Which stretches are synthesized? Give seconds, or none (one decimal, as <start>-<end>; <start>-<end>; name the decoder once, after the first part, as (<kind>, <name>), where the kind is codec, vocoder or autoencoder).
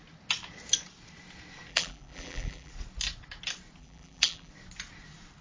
1.7-2.7 (vocoder, BigVGAN v2); 3.8-4.5